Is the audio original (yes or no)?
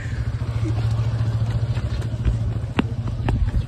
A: yes